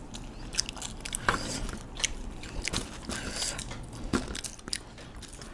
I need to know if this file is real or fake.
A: real